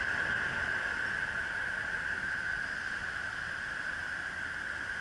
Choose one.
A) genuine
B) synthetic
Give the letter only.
A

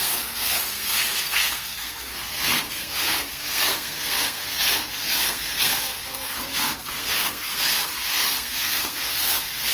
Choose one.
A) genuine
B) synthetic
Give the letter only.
B